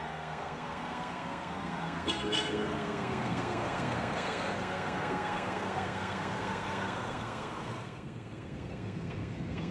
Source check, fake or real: fake